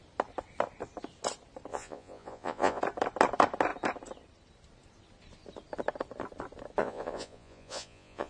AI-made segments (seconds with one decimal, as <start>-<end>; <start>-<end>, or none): 1.7-2.8; 6.8-8.3